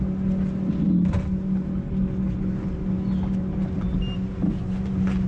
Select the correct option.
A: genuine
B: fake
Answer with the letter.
A